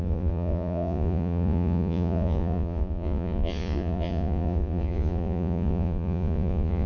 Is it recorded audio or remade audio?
remade